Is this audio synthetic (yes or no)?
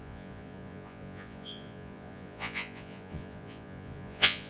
yes